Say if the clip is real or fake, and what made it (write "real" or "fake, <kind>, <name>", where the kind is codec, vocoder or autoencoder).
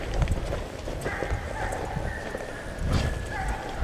real